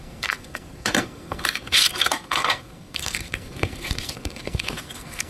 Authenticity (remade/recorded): remade